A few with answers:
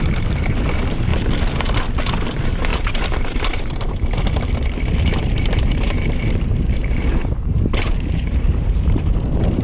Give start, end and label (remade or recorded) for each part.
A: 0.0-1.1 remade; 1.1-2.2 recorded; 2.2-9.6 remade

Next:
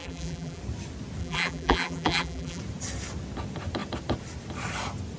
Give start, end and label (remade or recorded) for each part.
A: 0.0-0.6 remade; 0.6-1.2 recorded; 1.2-2.6 remade; 2.6-5.2 recorded

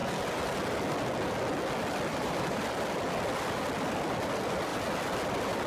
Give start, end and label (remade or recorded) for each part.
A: 0.0-2.1 recorded; 2.1-2.6 remade; 2.6-5.7 recorded